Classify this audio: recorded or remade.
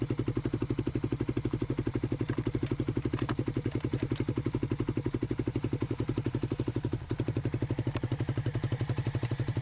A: remade